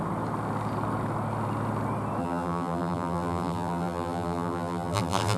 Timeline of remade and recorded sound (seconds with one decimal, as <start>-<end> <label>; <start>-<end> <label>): 0.0-2.2 recorded; 2.2-5.4 remade